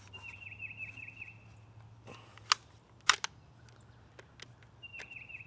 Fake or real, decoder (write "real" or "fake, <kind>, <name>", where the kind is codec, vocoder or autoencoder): real